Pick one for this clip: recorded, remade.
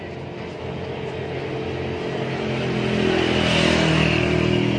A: recorded